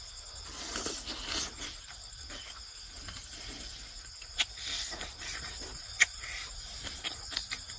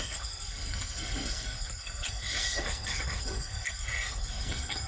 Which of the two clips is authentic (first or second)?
first